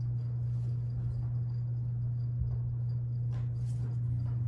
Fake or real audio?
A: real